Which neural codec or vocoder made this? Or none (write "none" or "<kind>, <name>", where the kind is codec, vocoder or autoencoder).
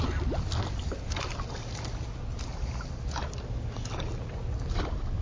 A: none